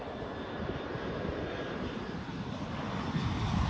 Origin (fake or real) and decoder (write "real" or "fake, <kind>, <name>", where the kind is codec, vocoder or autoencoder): real